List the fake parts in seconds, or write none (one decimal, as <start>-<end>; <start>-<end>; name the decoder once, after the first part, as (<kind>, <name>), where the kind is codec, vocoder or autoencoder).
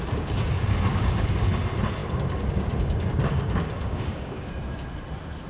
0.9-1.5 (codec, DAC); 2.0-4.5